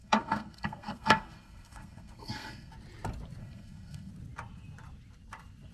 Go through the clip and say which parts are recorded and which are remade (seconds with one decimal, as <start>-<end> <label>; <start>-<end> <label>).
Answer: 0.0-2.7 remade; 2.7-3.4 recorded; 3.4-4.1 remade; 4.1-5.7 recorded